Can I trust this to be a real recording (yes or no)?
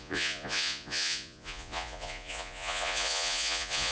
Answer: no